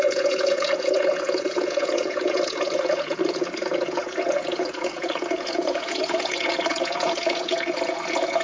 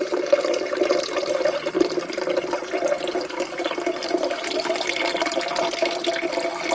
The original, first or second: second